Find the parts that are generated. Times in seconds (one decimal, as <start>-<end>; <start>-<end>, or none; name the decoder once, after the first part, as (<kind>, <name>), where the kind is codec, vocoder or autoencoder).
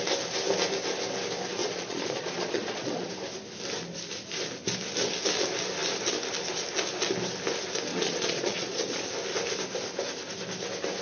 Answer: 1.6-3.1 (vocoder, Vocos); 7.9-9.0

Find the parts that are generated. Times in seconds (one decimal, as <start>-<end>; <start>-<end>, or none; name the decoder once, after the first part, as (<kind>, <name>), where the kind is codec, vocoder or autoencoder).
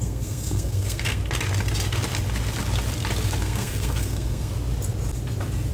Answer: 0.0-1.2 (codec, SNAC); 3.4-4.5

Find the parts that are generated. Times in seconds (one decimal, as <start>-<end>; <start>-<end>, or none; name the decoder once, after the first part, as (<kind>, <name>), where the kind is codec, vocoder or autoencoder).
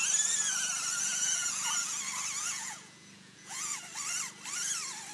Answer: 1.1-2.0 (vocoder, Vocos); 2.4-3.8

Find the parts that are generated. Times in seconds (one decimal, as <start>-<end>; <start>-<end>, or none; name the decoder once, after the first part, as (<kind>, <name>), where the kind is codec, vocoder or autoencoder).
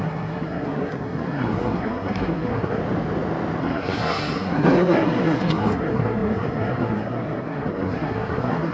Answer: 0.0-2.8 (codec, SNAC); 3.6-8.7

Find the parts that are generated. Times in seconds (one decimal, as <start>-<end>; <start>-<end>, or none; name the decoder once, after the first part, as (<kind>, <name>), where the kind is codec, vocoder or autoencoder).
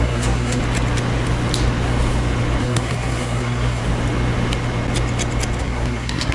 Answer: 0.0-0.6 (codec, SNAC); 2.6-3.8; 5.6-6.3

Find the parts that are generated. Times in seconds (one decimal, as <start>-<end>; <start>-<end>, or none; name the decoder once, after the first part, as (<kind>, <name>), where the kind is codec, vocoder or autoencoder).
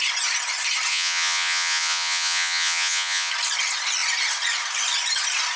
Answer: 0.9-3.3 (vocoder, Vocos)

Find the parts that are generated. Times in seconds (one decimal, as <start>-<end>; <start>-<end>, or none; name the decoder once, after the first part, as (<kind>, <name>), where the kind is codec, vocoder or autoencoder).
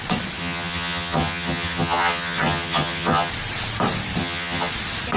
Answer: 0.4-3.3 (vocoder, HiFi-GAN); 4.2-4.7